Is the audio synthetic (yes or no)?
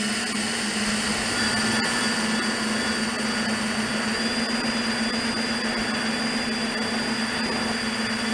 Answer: no